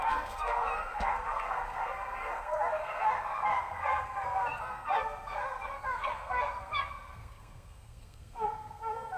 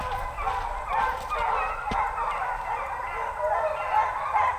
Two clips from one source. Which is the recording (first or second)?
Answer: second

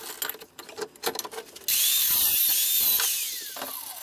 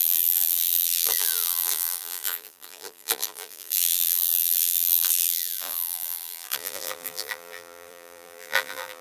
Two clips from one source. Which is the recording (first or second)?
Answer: first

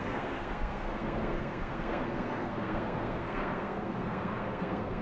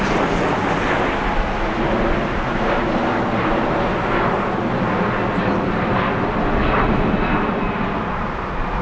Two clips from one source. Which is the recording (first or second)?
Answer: second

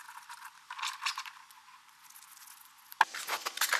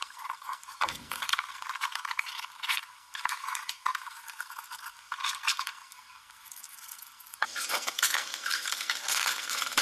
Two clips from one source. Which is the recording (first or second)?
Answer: first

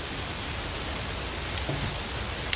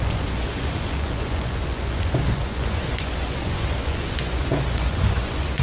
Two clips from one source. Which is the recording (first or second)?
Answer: first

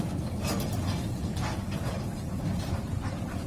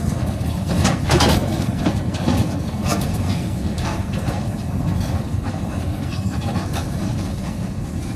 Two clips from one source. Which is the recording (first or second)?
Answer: first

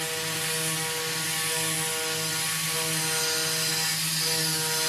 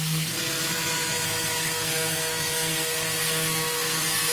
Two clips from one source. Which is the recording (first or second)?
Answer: first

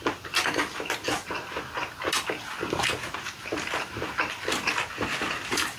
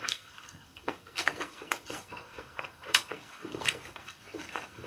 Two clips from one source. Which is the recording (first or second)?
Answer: first